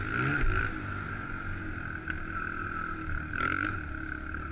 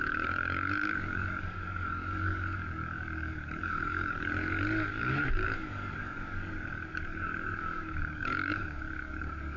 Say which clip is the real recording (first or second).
first